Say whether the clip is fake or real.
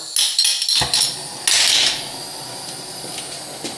real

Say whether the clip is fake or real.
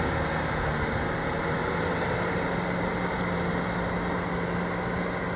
real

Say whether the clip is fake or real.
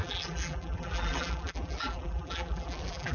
fake